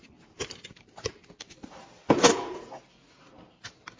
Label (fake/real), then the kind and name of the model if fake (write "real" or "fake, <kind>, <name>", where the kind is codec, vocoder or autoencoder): real